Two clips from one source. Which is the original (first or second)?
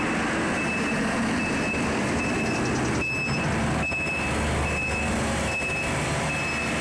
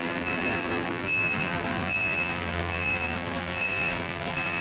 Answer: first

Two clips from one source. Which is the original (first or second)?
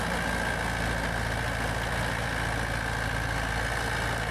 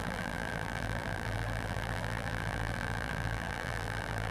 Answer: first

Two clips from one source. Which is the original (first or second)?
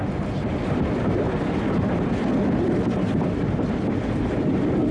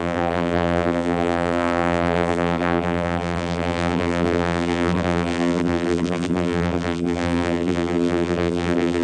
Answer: first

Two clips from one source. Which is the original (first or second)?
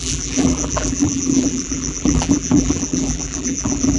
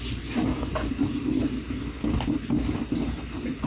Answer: second